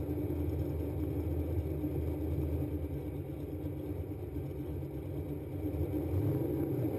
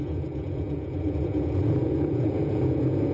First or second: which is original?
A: first